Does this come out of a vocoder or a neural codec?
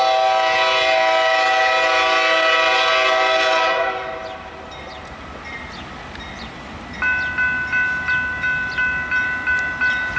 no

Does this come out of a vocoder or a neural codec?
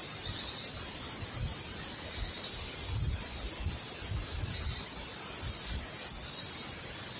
no